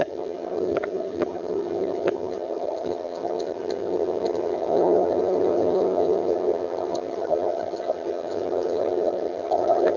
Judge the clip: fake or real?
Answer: fake